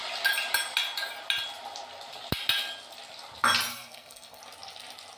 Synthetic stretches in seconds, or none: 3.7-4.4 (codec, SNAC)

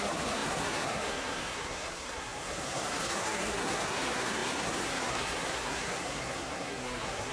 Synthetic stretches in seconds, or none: 0.0-7.3 (codec, SNAC)

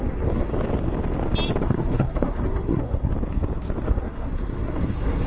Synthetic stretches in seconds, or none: 0.0-0.5 (codec, SNAC); 1.6-3.1; 3.9-5.3

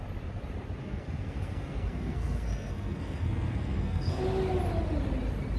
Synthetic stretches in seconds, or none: 0.8-4.2 (codec, SNAC)

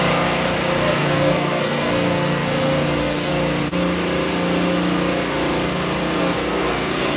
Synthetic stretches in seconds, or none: 1.0-3.3 (codec, SNAC); 6.2-7.2

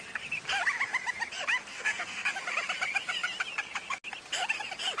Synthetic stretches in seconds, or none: 1.7-2.3 (codec, SNAC)